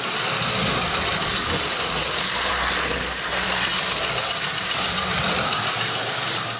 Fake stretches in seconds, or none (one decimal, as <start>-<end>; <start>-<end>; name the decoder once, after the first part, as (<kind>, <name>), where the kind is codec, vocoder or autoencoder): none